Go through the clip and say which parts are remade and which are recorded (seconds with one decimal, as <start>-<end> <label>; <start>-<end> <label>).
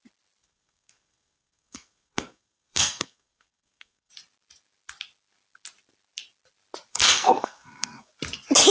0.0-0.4 recorded; 0.4-4.1 remade; 4.1-6.9 recorded; 6.9-8.1 remade; 8.1-8.7 recorded